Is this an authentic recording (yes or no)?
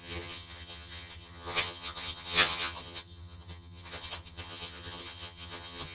no